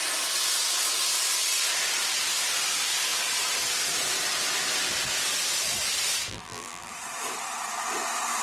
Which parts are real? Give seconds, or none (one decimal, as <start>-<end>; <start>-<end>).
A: 0.0-6.3; 6.9-8.4